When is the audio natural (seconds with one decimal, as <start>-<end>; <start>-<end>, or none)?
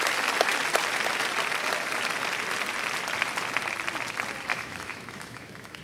0.0-4.5